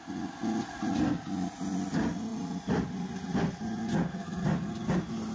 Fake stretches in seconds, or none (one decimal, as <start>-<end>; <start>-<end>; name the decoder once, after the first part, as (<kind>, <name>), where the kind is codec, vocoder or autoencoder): none